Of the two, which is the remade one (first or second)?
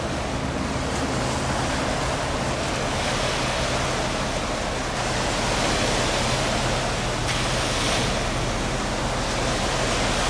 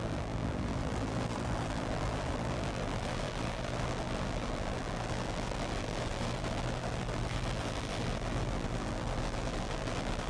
second